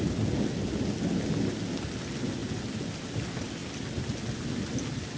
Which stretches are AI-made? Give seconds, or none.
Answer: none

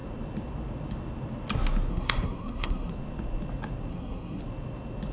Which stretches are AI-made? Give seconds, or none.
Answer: 1.9-2.9 (codec, SNAC); 3.9-4.4

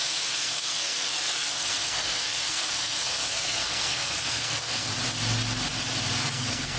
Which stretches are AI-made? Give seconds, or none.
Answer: 0.0-4.9 (codec, SNAC); 6.2-6.8

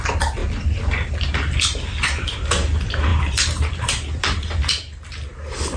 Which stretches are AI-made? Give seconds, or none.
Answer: 3.1-4.6 (vocoder, BigVGAN v2)

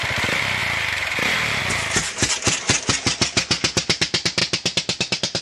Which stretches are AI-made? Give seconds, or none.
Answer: 0.6-1.6 (vocoder, BigVGAN v2)